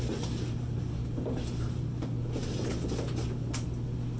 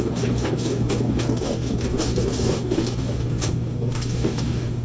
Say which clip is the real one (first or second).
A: first